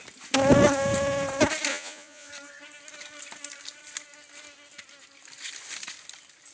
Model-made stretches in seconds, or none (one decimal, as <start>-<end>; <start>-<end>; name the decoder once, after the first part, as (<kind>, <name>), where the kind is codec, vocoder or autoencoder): 1.7-2.3 (vocoder, Vocos)